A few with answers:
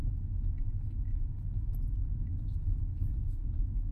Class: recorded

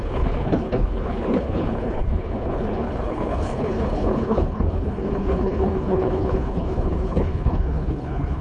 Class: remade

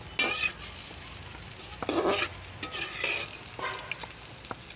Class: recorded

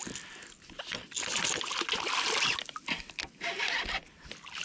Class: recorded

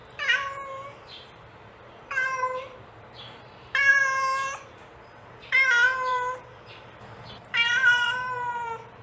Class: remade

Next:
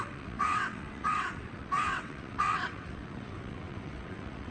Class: remade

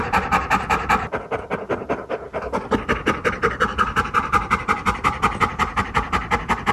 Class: recorded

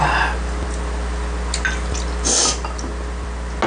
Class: recorded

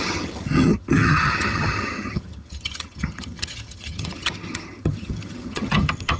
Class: remade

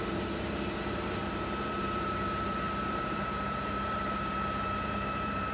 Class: remade